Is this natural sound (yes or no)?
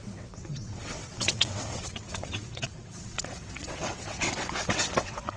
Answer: no